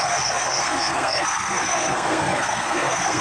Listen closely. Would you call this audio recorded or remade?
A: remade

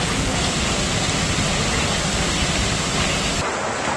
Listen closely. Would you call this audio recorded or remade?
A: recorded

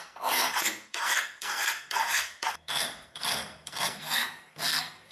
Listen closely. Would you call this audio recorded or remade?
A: remade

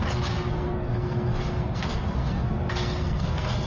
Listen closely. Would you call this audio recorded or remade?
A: remade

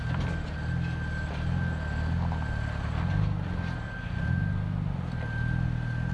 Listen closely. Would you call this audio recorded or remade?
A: recorded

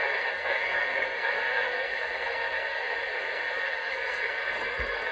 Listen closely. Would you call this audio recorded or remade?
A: remade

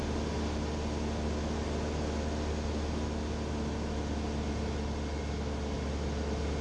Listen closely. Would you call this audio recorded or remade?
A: recorded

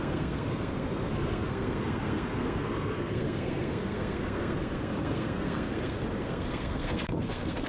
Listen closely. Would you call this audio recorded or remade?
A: remade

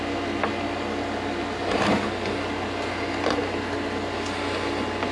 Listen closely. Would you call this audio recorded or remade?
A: recorded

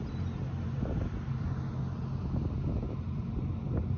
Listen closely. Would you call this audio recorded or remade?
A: recorded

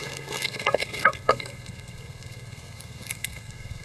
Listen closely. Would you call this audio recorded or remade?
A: remade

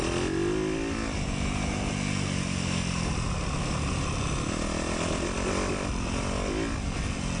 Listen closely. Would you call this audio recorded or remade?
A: recorded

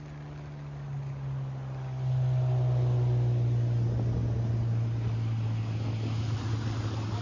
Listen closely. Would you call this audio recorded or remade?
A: recorded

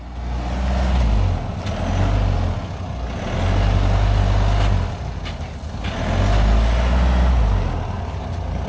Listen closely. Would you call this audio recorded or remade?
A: recorded